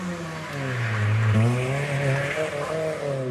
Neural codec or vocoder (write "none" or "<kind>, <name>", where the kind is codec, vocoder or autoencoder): none